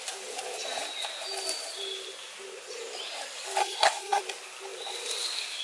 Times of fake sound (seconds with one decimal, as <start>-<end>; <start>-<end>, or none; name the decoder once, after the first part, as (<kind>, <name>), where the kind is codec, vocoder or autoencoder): 3.6-4.2 (codec, SNAC)